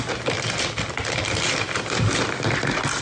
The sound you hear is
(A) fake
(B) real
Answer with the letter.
A